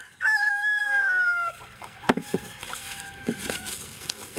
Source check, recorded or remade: remade